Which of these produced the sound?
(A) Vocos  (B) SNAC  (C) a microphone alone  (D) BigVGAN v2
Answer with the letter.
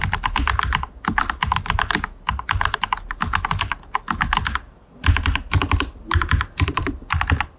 C